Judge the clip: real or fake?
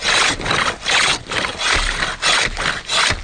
real